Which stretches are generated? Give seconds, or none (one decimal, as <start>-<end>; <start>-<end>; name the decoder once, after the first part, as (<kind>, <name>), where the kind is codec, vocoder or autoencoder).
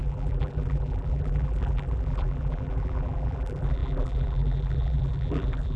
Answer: 0.0-5.8 (vocoder, BigVGAN v2)